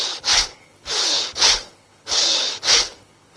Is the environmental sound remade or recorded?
remade